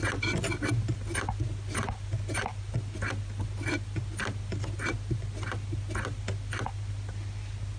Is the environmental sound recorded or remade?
recorded